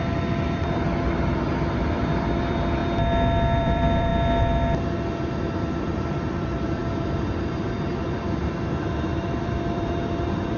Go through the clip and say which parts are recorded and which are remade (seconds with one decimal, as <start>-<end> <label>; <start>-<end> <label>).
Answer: 0.0-2.8 remade; 2.8-3.6 recorded; 3.6-4.1 remade; 4.1-5.8 recorded; 5.8-10.6 remade